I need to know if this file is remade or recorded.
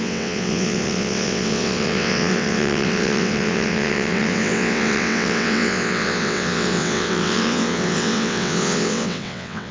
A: remade